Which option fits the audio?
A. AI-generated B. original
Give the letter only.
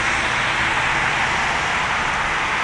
B